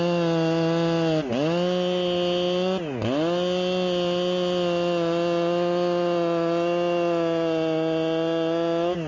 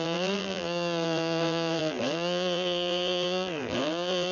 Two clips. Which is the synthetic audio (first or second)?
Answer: second